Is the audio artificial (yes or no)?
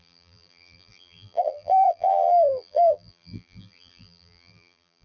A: yes